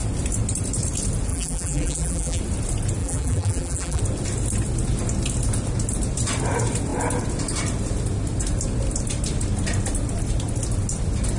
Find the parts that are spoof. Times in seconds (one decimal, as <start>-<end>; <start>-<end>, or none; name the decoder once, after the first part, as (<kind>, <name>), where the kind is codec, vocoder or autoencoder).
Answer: 1.3-2.4 (vocoder, BigVGAN v2); 3.0-4.0